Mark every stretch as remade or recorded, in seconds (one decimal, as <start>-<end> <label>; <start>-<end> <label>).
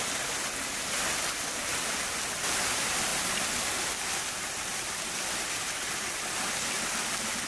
0.0-7.5 recorded